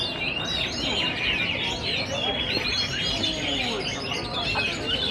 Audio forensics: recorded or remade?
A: recorded